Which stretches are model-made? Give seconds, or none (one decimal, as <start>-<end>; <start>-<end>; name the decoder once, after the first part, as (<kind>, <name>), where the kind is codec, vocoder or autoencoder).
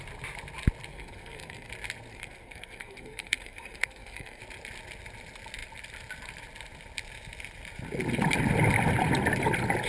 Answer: 0.9-1.7 (codec, SNAC); 2.1-4.4